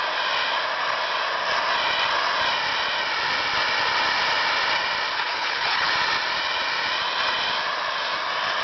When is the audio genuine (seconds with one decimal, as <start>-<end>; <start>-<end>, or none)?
0.0-5.1; 5.9-8.6